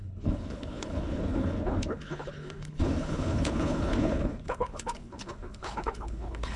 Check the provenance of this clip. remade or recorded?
remade